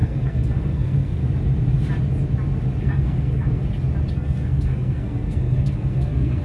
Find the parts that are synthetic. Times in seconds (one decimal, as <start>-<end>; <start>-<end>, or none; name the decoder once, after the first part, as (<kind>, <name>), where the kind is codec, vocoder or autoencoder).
0.0-1.2 (codec, SNAC); 2.8-3.6; 4.1-6.4